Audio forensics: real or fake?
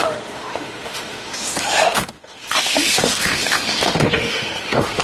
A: fake